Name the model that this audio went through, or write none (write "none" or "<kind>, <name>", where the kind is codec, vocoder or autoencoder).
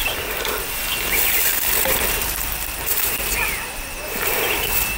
vocoder, BigVGAN v2